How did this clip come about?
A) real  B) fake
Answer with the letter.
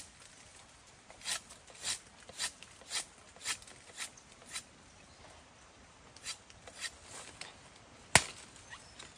A